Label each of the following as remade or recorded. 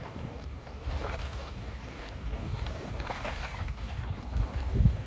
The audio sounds remade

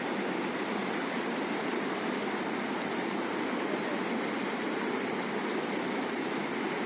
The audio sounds remade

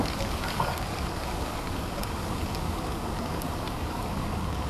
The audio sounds remade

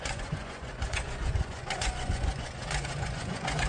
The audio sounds remade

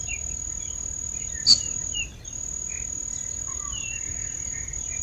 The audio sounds recorded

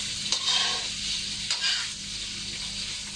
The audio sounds recorded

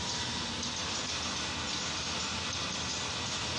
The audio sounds recorded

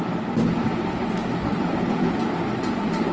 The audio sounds recorded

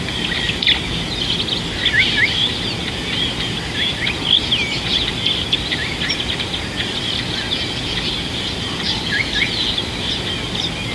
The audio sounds recorded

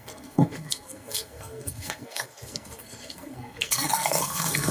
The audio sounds remade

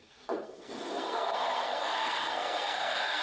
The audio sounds remade